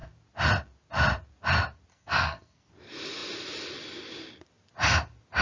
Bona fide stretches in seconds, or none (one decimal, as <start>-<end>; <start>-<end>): 0.0-1.9; 2.7-5.4